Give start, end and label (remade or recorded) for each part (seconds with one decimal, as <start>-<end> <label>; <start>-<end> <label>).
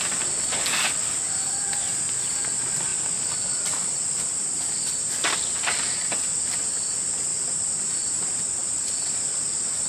0.0-2.9 recorded; 2.9-6.7 remade; 6.7-7.3 recorded; 7.3-8.2 remade; 8.2-8.6 recorded; 8.6-9.9 remade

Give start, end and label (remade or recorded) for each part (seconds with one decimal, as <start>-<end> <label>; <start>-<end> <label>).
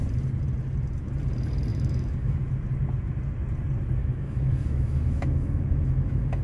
0.0-1.7 recorded; 1.7-2.4 remade; 2.4-4.0 recorded; 4.0-6.4 remade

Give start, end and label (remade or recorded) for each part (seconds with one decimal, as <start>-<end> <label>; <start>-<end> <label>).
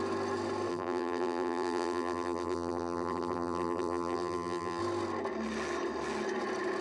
0.0-0.7 recorded; 0.7-4.8 remade; 4.8-6.8 recorded